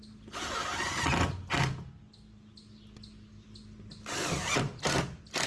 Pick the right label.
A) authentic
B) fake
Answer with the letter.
A